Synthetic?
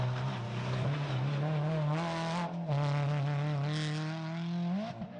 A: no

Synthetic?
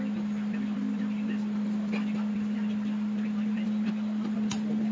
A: no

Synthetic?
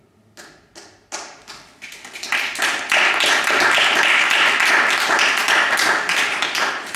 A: no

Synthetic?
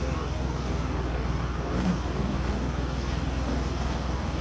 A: yes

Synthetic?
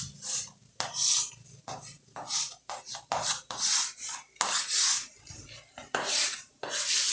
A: no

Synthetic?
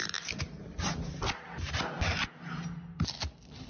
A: no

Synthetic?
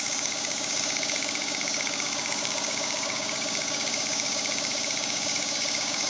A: yes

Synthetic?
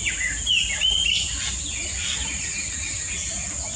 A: no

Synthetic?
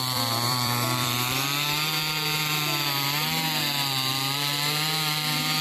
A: yes